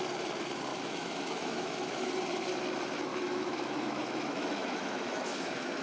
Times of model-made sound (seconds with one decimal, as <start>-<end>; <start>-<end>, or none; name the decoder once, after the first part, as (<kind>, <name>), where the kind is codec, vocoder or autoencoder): 0.7-2.1 (autoencoder, DAC-VAE); 3.1-5.8

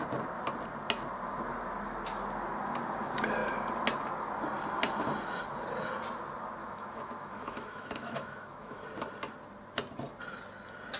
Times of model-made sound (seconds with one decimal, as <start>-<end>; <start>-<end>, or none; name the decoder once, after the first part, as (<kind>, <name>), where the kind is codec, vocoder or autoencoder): 6.6-8.8 (autoencoder, DAC-VAE)